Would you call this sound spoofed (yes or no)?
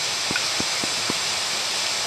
no